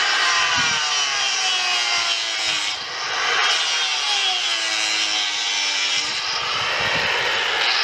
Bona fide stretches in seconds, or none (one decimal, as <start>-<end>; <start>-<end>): 0.0-7.8